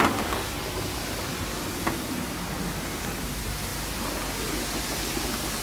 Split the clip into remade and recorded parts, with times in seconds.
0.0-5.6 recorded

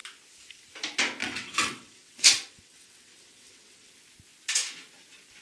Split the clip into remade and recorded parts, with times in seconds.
0.0-1.2 recorded; 1.2-3.9 remade; 3.9-5.4 recorded

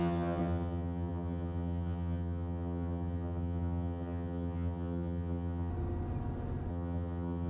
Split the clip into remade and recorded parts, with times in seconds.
0.0-5.7 remade; 5.7-6.7 recorded; 6.7-7.5 remade

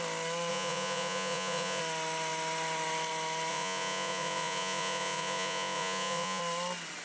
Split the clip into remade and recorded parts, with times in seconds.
0.0-0.5 recorded; 0.5-1.8 remade; 1.8-3.5 recorded; 3.5-6.4 remade; 6.4-7.0 recorded

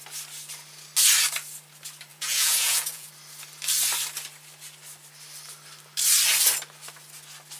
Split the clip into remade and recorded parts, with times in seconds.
0.0-2.1 recorded; 2.1-3.1 remade; 3.1-7.6 recorded